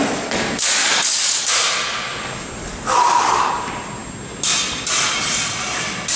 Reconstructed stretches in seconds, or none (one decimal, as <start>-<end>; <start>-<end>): 0.8-1.5; 2.7-3.5